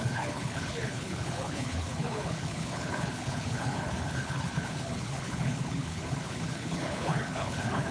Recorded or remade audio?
remade